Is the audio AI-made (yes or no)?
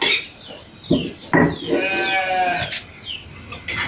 no